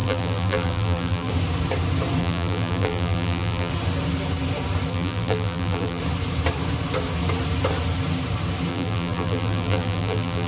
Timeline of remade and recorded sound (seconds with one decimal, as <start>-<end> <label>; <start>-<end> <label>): 0.0-1.3 remade; 1.3-2.2 recorded; 2.2-3.7 remade; 3.7-4.9 recorded; 4.9-6.0 remade; 6.0-8.7 recorded; 8.7-10.5 remade